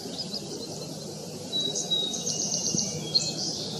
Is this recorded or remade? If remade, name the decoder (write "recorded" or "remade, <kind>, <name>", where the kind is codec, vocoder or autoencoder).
recorded